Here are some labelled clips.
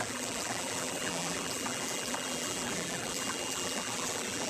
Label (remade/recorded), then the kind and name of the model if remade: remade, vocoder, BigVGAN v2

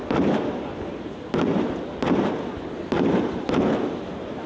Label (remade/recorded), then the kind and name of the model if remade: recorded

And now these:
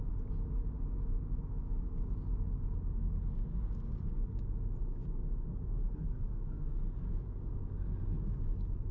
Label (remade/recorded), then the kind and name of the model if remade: recorded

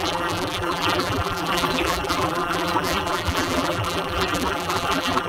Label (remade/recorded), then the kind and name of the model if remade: remade, vocoder, BigVGAN v2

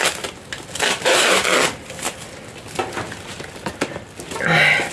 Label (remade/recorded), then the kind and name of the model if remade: recorded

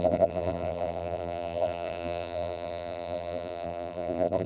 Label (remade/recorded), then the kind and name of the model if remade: remade, vocoder, BigVGAN v2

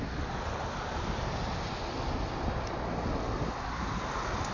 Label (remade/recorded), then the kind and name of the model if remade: recorded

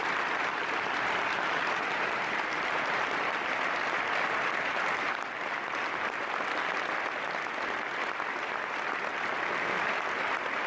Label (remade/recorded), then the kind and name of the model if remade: remade, vocoder, BigVGAN v2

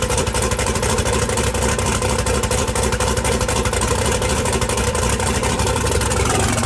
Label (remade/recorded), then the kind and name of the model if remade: remade, vocoder, BigVGAN v2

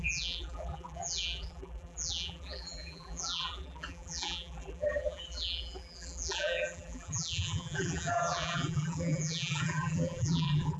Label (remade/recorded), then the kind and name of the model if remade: remade, vocoder, BigVGAN v2